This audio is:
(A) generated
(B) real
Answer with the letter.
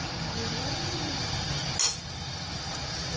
B